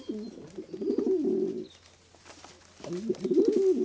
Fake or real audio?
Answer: real